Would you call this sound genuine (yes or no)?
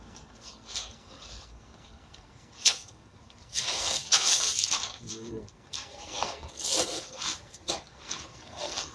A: no